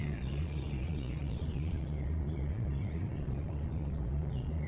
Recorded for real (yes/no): no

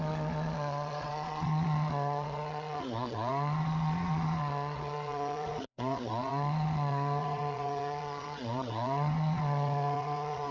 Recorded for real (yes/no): no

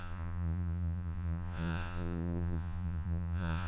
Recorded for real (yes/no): no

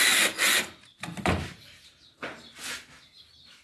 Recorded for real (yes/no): yes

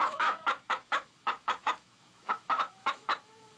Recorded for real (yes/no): no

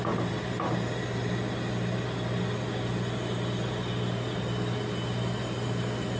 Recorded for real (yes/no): yes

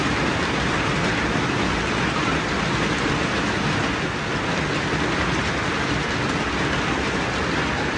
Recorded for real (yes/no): yes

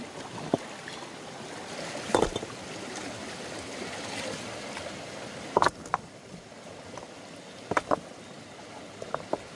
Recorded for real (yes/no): yes